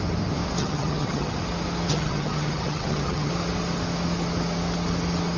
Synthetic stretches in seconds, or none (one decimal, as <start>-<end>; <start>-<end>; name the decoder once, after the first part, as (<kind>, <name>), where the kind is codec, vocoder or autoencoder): 0.6-1.4 (vocoder, HiFi-GAN); 1.9-3.3